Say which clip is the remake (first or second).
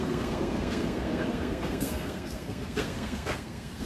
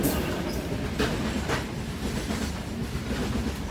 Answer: first